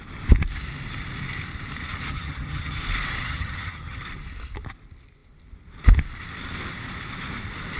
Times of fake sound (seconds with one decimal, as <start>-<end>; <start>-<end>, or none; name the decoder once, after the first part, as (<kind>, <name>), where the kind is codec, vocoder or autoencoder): 2.1-2.8 (vocoder, HiFi-GAN); 3.2-4.0